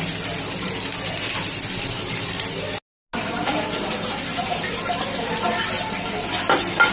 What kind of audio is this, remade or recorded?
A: recorded